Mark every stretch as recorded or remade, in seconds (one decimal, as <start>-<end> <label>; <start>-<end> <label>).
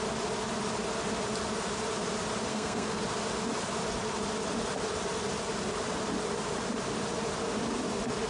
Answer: 0.0-2.5 recorded; 2.5-3.0 remade; 3.0-8.3 recorded